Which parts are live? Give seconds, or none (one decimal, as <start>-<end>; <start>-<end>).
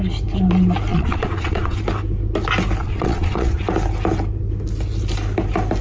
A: 0.0-0.9; 1.8-2.8; 3.6-5.8